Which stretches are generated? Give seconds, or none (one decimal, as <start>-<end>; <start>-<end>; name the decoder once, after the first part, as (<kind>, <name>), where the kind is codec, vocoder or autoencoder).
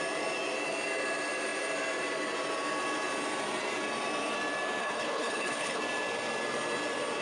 4.8-5.8 (codec, HILCodec)